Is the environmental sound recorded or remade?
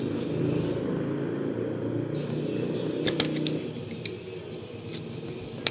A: recorded